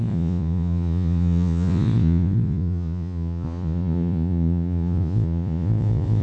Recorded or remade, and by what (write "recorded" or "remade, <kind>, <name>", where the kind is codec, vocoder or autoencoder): remade, vocoder, Vocos